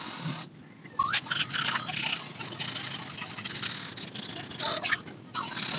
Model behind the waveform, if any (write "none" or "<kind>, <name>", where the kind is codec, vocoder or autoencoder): none